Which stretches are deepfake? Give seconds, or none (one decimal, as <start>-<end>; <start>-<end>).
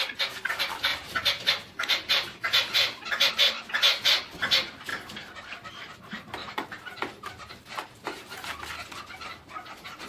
0.9-3.3; 4.9-5.7; 6.4-8.5